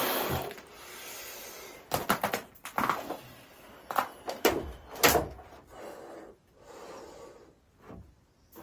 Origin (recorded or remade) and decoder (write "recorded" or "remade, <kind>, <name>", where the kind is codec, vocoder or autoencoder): recorded